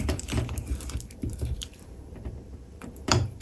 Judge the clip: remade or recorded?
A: remade